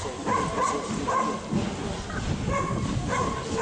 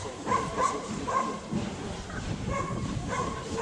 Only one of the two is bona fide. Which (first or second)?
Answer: first